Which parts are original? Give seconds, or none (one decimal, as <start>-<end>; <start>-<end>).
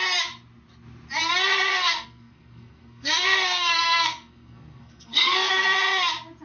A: 0.0-1.7; 5.5-6.4